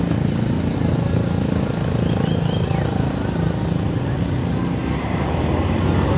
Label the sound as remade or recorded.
recorded